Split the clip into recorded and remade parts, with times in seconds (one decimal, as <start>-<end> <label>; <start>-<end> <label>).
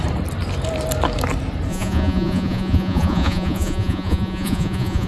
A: 0.0-1.7 recorded; 1.7-5.1 remade